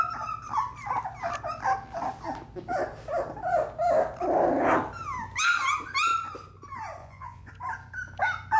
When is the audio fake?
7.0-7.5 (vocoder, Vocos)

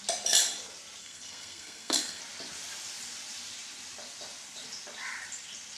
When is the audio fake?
1.0-2.2 (codec, SNAC)